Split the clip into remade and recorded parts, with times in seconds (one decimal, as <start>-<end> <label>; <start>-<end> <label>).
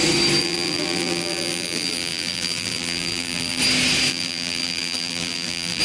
0.0-0.4 recorded; 0.4-3.6 remade; 3.6-4.1 recorded; 4.1-5.8 remade